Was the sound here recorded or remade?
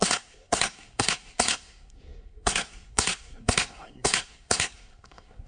remade